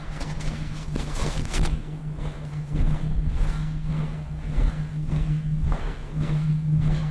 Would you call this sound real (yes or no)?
no